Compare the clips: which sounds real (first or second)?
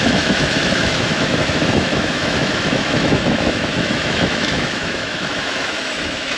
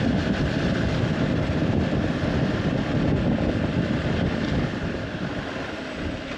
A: second